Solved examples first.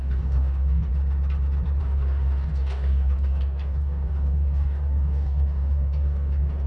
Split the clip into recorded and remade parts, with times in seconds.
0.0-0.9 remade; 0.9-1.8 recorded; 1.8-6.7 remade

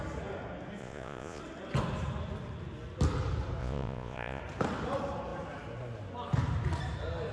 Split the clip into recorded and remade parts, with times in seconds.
0.0-0.8 recorded; 0.8-1.4 remade; 1.4-3.6 recorded; 3.6-4.4 remade; 4.4-7.3 recorded